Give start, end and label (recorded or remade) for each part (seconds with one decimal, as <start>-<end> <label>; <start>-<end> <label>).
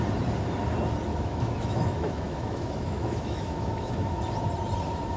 0.0-1.1 recorded; 1.1-4.2 remade; 4.2-5.2 recorded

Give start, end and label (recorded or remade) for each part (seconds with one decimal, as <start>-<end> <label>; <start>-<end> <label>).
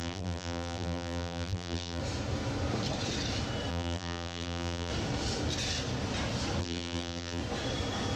0.0-2.0 remade; 2.0-3.7 recorded; 3.7-4.9 remade; 4.9-6.6 recorded; 6.6-7.4 remade; 7.4-8.2 recorded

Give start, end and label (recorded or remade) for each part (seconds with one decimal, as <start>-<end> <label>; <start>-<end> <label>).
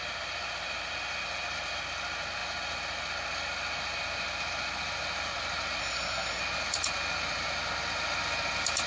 0.0-5.8 recorded; 5.8-6.4 remade; 6.4-8.9 recorded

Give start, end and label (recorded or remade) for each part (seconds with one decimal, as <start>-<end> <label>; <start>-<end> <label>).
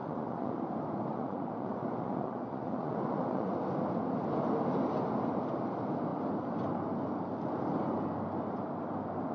0.0-0.6 remade; 0.6-1.1 recorded; 1.1-3.5 remade; 3.5-9.3 recorded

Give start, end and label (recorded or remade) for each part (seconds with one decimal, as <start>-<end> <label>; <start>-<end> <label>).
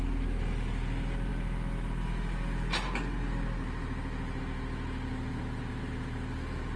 0.0-6.8 recorded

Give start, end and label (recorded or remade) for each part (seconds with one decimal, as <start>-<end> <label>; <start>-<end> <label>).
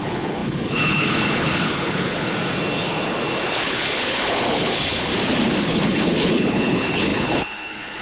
0.0-2.3 remade; 2.3-3.5 recorded; 3.5-5.1 remade; 5.1-5.6 recorded; 5.6-8.0 remade